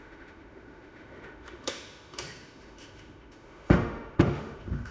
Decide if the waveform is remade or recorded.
remade